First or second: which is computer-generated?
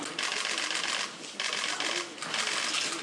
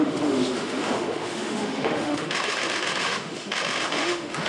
second